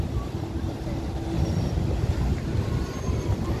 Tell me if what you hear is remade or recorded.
recorded